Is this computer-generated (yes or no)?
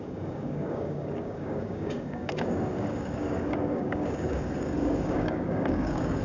yes